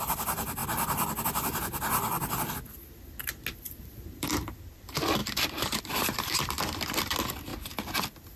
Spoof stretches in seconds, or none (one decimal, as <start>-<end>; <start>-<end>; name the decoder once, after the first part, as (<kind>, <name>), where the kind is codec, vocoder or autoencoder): 0.0-0.6 (vocoder, BigVGAN v2); 3.5-7.5